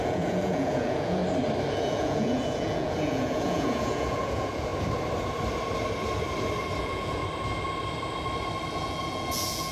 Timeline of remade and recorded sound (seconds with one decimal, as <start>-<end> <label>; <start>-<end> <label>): 0.0-1.2 remade; 1.2-1.7 recorded; 1.7-4.7 remade; 4.7-6.8 recorded; 6.8-7.2 remade; 7.2-8.7 recorded; 8.7-9.7 remade